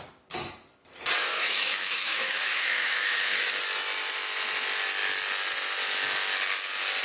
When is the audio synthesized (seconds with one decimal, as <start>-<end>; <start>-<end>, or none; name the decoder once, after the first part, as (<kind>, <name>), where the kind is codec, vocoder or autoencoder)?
1.2-3.6 (autoencoder, DAC-VAE)